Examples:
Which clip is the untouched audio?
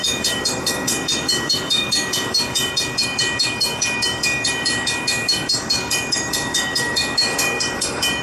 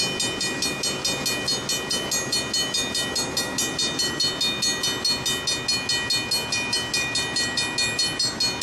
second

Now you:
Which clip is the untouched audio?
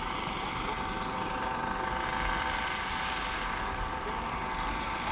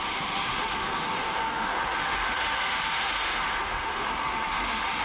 first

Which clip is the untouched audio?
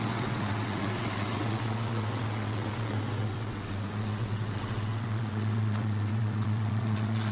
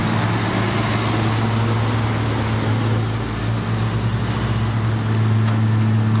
second